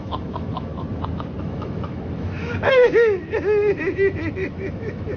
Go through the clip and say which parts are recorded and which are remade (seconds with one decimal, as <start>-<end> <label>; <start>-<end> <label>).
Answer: 0.0-0.7 remade; 0.7-1.4 recorded; 1.4-3.2 remade; 3.2-4.3 recorded; 4.3-5.2 remade